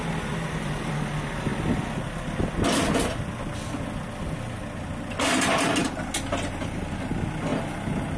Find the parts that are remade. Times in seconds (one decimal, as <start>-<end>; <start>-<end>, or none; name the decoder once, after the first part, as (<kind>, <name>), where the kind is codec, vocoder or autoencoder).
none